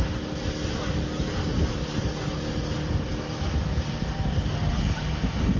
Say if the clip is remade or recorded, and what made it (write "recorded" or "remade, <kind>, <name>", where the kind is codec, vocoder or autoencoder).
recorded